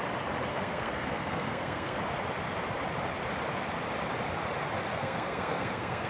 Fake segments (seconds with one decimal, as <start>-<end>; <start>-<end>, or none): 0.5-2.0; 4.9-6.1